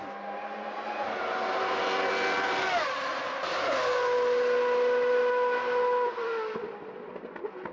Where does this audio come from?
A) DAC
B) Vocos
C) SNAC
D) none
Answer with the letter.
D